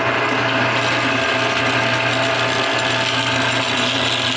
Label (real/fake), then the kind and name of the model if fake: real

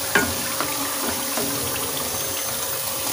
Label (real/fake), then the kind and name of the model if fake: real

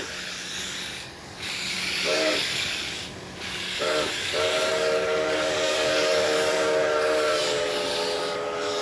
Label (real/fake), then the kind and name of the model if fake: fake, codec, DAC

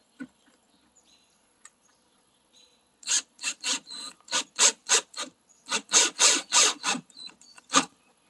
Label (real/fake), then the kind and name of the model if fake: fake, vocoder, Vocos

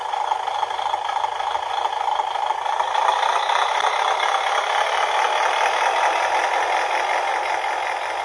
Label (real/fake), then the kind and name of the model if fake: real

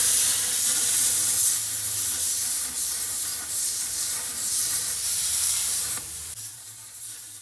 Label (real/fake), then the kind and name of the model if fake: fake, vocoder, BigVGAN v2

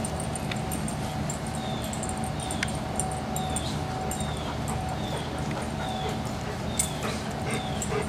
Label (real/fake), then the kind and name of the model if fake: real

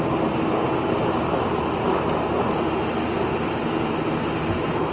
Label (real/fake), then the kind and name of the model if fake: real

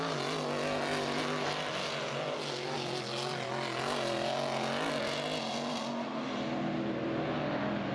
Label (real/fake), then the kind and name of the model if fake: real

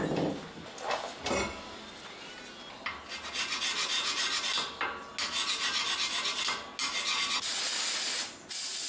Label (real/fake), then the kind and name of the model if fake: real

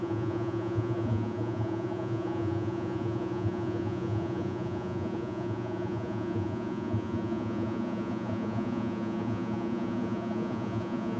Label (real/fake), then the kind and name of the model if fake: fake, vocoder, Vocos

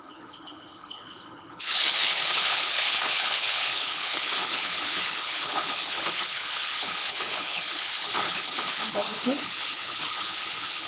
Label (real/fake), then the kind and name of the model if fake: fake, codec, HILCodec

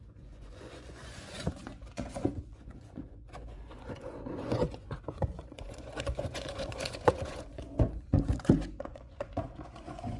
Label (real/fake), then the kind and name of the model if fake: fake, vocoder, Vocos